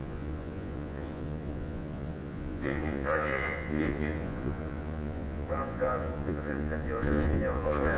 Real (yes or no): no